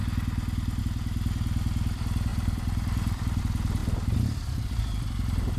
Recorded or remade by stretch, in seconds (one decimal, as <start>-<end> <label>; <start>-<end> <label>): 0.0-2.3 recorded; 2.3-3.4 remade; 3.4-3.8 recorded; 3.8-5.6 remade

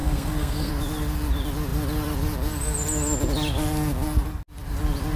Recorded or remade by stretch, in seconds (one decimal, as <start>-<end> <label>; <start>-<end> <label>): 0.0-0.7 remade; 0.7-5.2 recorded

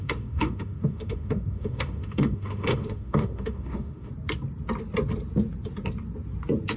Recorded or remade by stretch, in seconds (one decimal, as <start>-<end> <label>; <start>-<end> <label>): 0.0-4.1 remade; 4.1-6.8 recorded

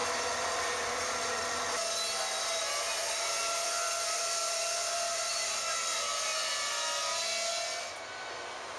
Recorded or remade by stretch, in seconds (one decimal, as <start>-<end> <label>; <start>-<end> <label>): 0.0-1.6 remade; 1.6-3.0 recorded; 3.0-5.3 remade; 5.3-8.8 recorded

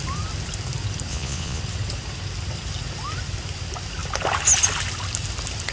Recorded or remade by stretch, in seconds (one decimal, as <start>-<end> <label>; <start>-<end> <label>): 0.0-1.1 recorded; 1.1-1.6 remade; 1.6-5.7 recorded

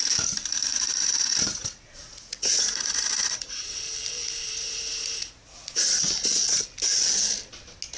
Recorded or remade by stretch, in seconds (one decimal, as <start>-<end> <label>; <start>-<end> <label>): 0.0-0.7 recorded; 0.7-3.8 remade; 3.8-4.2 recorded; 4.2-5.8 remade; 5.8-8.0 recorded